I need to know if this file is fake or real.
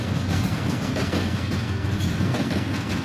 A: fake